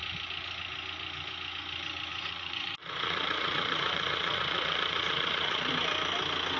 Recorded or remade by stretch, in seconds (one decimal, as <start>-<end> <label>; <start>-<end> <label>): 0.0-2.1 recorded; 2.1-5.7 remade; 5.7-6.6 recorded